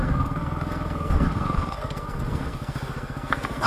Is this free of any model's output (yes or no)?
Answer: no